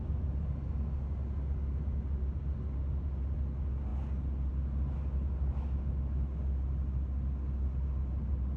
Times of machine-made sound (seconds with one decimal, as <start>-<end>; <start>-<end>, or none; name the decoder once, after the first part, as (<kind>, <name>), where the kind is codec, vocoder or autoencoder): none